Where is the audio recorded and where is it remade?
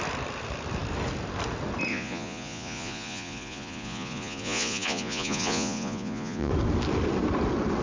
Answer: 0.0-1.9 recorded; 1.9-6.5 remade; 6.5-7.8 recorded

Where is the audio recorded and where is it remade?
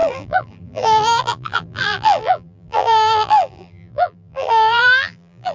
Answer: 0.0-5.5 remade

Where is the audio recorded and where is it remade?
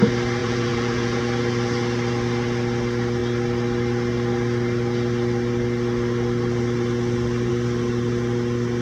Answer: 0.0-0.4 recorded; 0.4-1.2 remade; 1.2-8.8 recorded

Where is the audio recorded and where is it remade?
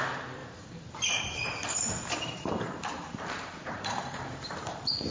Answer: 0.0-0.4 recorded; 0.4-1.2 remade; 1.2-1.6 recorded; 1.6-5.1 remade